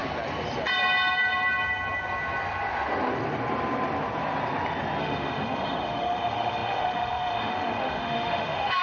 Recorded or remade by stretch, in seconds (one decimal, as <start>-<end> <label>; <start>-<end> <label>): 0.0-5.0 recorded; 5.0-8.8 remade